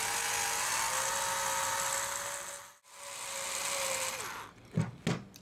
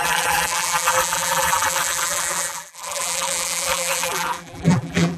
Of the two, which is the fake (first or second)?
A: second